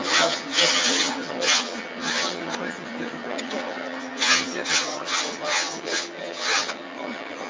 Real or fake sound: fake